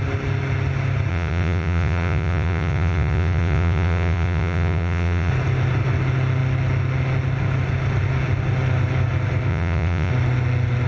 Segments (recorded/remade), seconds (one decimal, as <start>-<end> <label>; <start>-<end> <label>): 0.0-1.1 recorded; 1.1-5.3 remade; 5.3-9.5 recorded; 9.5-10.1 remade; 10.1-10.9 recorded